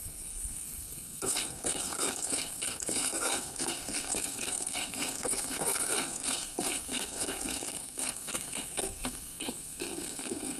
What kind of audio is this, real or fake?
fake